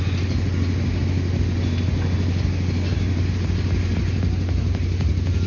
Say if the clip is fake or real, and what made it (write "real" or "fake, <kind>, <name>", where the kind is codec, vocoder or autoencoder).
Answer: real